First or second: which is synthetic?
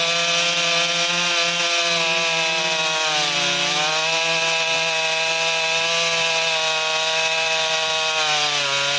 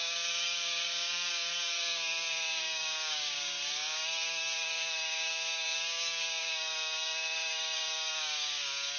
second